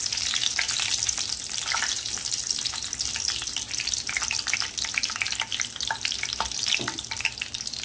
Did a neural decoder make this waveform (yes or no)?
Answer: no